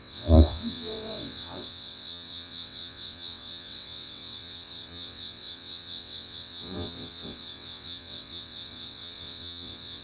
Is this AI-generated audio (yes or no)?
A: yes